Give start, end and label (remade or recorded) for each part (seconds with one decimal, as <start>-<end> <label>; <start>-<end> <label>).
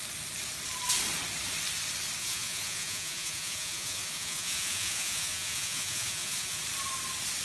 0.0-2.2 recorded; 2.2-6.6 remade; 6.6-7.4 recorded